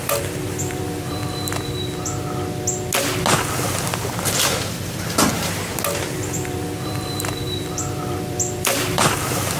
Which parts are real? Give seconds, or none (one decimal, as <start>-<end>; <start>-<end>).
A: 1.2-4.7; 5.3-6.3